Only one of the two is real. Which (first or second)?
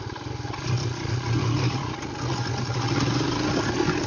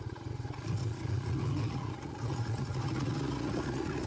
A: first